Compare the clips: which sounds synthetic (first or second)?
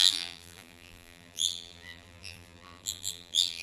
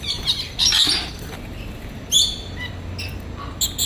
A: first